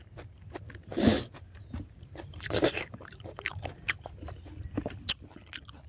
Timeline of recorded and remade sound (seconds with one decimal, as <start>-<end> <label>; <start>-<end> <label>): 0.0-1.1 recorded; 1.1-4.5 remade; 4.5-5.9 recorded